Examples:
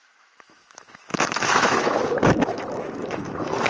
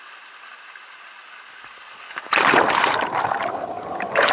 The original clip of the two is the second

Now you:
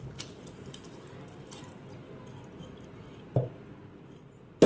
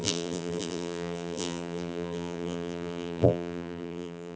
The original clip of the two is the first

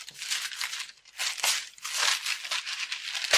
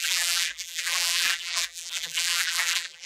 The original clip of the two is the first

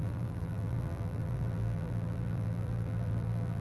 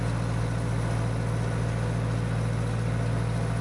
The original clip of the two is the second